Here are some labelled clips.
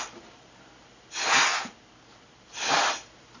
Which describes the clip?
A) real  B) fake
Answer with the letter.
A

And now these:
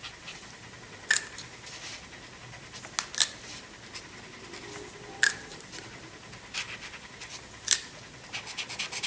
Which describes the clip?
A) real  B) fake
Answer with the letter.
A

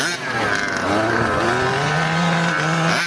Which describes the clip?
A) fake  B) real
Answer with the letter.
B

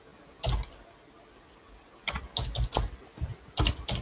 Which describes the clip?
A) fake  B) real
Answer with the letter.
B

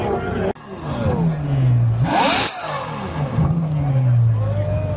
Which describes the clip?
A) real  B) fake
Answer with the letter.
A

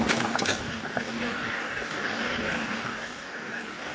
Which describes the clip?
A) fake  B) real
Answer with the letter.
A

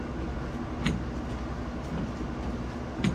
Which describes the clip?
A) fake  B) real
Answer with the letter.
B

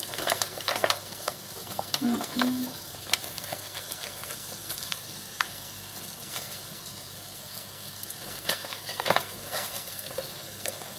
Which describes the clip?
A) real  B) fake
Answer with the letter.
B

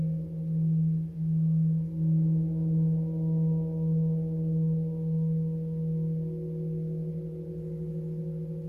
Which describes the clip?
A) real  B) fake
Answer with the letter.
A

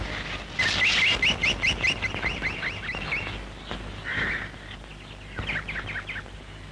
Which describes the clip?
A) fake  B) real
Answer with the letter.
B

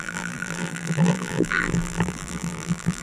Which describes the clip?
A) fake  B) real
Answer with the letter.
A